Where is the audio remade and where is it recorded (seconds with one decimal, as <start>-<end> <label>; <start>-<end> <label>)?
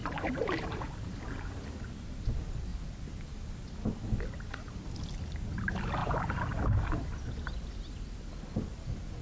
0.0-1.5 remade; 1.5-2.7 recorded; 2.7-3.5 remade; 3.5-6.0 recorded; 6.0-7.5 remade; 7.5-9.2 recorded